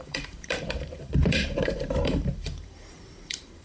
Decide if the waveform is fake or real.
fake